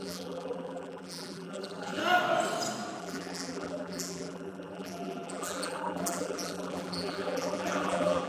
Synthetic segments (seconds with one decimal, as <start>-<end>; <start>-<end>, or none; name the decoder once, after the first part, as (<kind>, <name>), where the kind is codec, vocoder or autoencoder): 0.0-2.0 (vocoder, BigVGAN v2); 3.0-8.3